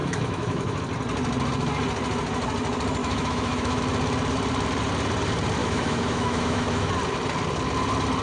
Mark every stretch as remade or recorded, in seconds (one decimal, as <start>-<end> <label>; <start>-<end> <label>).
0.0-0.8 remade; 0.8-3.0 recorded; 3.0-3.8 remade; 3.8-5.6 recorded; 5.6-6.9 remade; 6.9-8.2 recorded